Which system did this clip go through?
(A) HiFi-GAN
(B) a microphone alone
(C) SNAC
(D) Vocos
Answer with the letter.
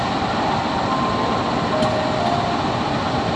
B